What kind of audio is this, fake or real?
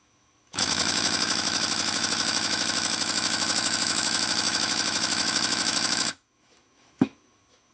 fake